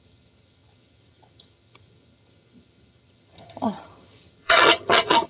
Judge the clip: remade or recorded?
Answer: remade